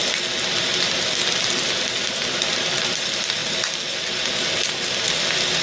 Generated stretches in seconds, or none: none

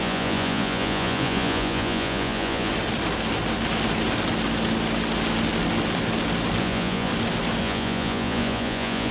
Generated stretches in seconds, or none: 0.0-2.7 (vocoder, Vocos); 6.6-7.1; 7.6-9.1

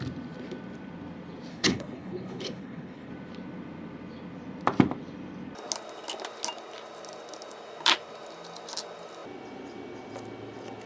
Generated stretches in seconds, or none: 1.5-3.1 (codec, HILCodec)

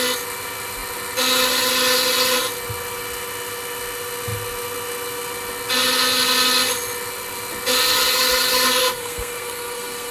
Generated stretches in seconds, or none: 8.8-10.1 (codec, SNAC)

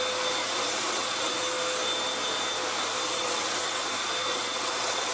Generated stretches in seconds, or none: 0.4-1.4 (vocoder, WaveNeXt); 3.1-3.8; 4.3-5.1

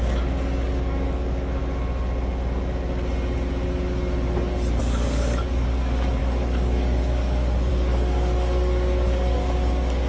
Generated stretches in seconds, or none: 0.0-1.6 (codec, DAC); 4.8-10.1

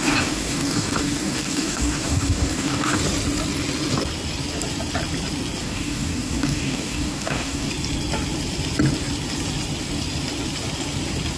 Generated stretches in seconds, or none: 0.0-3.0 (codec, DAC); 5.6-7.7

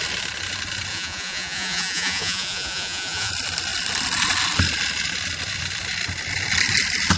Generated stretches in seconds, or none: 0.9-3.3 (vocoder, Vocos)